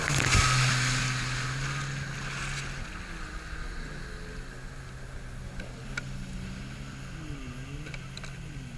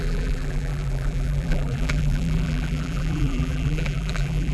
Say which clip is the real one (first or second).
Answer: first